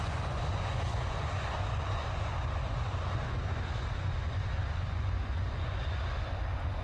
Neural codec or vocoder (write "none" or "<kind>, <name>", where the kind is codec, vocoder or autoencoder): vocoder, Vocos